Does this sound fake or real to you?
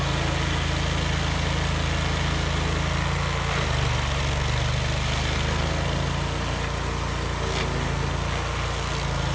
real